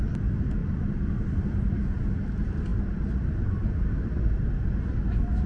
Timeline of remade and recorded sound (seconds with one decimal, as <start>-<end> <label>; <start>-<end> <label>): 0.0-0.6 recorded; 0.6-1.8 remade; 1.8-5.5 recorded